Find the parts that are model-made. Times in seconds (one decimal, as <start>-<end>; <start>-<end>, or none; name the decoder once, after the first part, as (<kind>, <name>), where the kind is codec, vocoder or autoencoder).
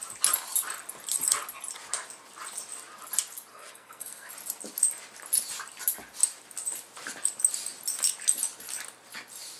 3.5-4.3 (codec, SNAC)